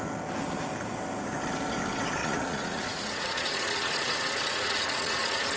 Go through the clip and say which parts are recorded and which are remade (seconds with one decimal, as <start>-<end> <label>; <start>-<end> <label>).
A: 0.0-2.2 recorded; 2.2-5.6 remade

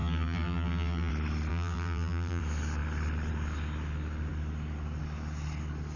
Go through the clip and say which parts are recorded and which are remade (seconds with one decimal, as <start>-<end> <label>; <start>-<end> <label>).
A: 0.0-1.1 remade; 1.1-1.5 recorded; 1.5-2.4 remade; 2.4-6.0 recorded

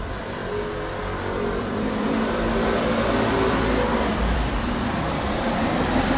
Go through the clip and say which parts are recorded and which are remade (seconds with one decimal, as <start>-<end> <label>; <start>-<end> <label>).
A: 0.0-0.4 remade; 0.4-1.6 recorded; 1.6-6.2 remade

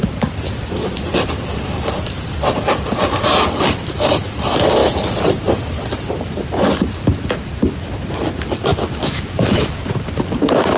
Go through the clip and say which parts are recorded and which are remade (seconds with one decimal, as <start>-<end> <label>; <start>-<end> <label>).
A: 0.0-8.7 recorded; 8.7-9.7 remade; 9.7-10.8 recorded

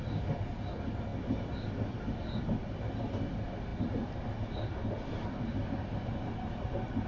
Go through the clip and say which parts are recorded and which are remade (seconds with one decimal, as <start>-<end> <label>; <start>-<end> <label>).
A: 0.0-7.1 recorded

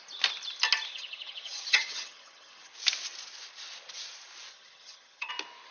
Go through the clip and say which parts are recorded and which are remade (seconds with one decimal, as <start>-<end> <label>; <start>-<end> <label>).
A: 0.0-0.9 recorded; 0.9-2.7 remade; 2.7-4.5 recorded; 4.5-5.3 remade; 5.3-5.7 recorded

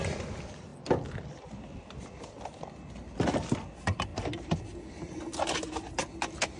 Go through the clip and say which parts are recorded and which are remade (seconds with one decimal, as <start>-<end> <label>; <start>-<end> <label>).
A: 0.0-6.6 recorded